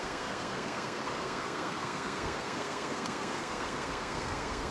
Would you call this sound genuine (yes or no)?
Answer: no